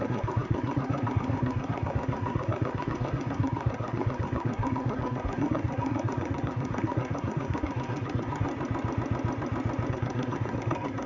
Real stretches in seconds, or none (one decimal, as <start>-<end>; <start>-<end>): 8.5-9.9

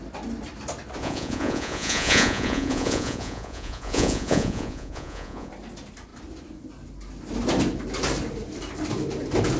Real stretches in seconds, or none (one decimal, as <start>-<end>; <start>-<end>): 0.0-1.0; 5.5-9.6

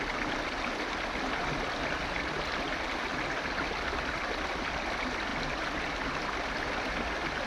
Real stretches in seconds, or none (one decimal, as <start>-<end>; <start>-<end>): 0.0-7.5

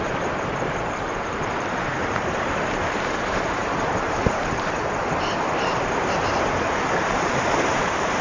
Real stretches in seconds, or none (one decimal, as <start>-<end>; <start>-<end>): none